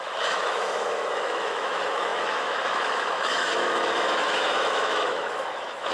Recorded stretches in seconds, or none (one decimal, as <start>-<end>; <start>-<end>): none